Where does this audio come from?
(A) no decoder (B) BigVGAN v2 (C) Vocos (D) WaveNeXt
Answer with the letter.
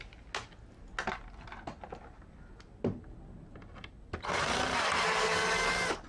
A